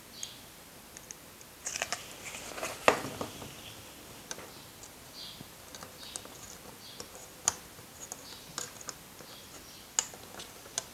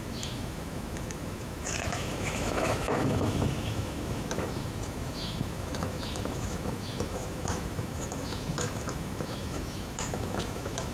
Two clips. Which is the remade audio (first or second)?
second